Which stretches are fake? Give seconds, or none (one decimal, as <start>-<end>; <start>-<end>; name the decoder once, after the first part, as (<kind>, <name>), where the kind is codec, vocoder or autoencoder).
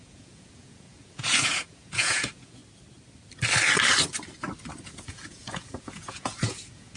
0.0-2.6 (vocoder, Vocos); 4.8-7.0